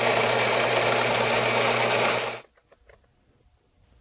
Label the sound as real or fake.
real